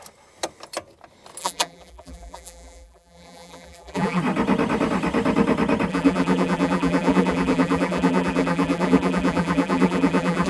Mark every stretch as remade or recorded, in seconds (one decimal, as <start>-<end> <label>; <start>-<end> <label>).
0.0-1.4 recorded; 1.4-4.2 remade; 4.2-5.9 recorded; 5.9-10.5 remade